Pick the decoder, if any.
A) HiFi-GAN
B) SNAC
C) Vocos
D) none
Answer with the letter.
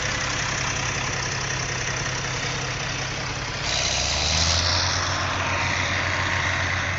D